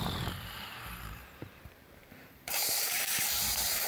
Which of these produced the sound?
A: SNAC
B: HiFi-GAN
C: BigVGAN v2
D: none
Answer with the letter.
C